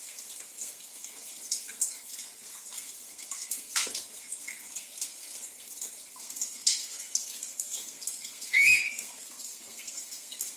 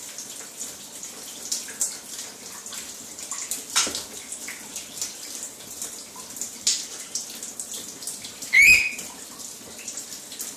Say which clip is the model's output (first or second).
first